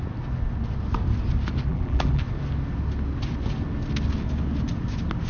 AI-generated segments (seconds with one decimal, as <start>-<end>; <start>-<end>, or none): 1.7-2.2